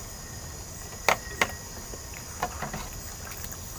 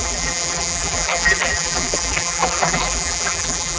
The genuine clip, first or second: first